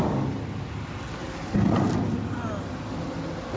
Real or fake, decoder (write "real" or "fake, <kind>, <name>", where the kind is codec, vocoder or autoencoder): real